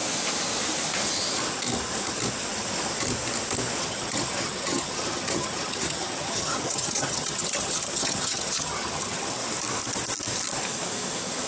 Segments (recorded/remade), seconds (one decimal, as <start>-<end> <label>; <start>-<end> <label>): 0.0-3.8 recorded; 3.8-9.4 remade; 9.4-11.5 recorded